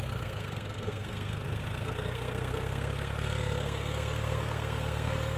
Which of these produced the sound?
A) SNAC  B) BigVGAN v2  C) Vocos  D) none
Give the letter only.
A